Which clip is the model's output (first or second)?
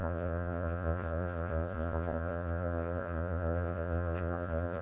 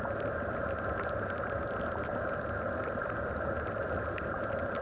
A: first